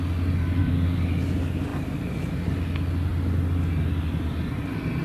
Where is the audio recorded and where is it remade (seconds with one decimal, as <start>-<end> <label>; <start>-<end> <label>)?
0.0-0.6 recorded; 0.6-1.1 remade; 1.1-5.0 recorded